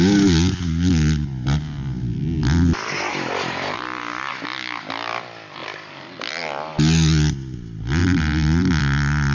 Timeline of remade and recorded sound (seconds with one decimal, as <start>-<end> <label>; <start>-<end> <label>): 0.0-3.1 recorded; 3.1-4.3 remade; 4.3-8.0 recorded; 8.0-8.8 remade; 8.8-9.3 recorded